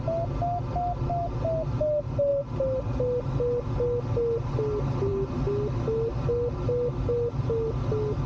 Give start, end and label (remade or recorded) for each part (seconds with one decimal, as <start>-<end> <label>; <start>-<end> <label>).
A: 0.0-8.3 recorded